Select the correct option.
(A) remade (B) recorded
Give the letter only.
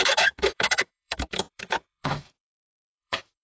A